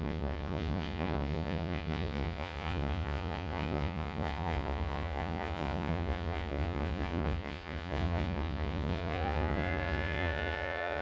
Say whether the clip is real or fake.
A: fake